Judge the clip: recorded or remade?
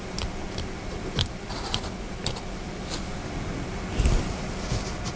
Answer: remade